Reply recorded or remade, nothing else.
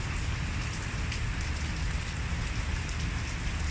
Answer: recorded